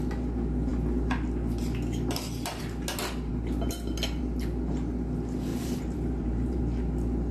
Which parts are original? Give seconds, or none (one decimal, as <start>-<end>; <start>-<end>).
0.0-5.5; 6.6-7.3